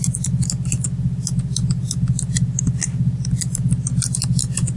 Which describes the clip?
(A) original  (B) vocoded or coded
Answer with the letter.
A